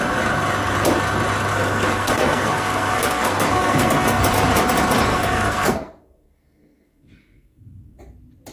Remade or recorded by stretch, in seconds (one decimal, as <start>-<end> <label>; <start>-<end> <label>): 0.0-1.5 recorded; 1.5-4.2 remade; 4.2-5.1 recorded; 5.1-8.0 remade; 8.0-8.5 recorded